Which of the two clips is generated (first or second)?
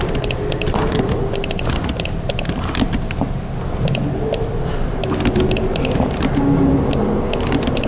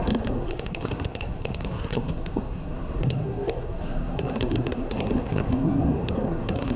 second